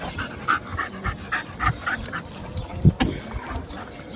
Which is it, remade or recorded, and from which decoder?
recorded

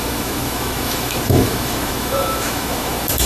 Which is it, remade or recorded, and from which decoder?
remade, autoencoder, DAC-VAE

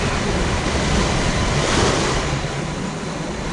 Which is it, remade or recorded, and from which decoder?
recorded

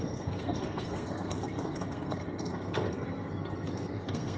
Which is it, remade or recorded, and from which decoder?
remade, codec, SNAC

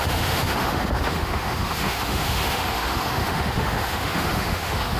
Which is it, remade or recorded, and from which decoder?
remade, autoencoder, DAC-VAE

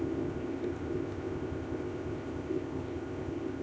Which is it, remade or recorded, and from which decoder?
remade, codec, ZipCodec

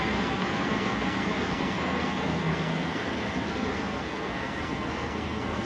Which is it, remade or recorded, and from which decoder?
remade, codec, SNAC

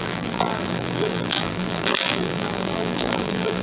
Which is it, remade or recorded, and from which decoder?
remade, vocoder, BigVGAN v2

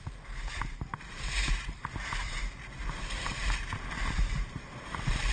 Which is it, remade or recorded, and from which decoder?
remade, vocoder, BigVGAN v2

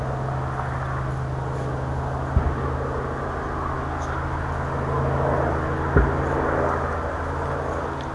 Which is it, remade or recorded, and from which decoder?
recorded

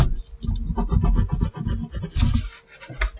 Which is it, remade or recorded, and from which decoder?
recorded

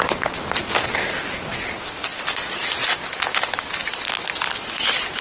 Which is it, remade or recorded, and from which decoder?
recorded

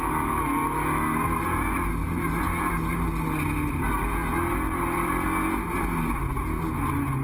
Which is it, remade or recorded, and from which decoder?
recorded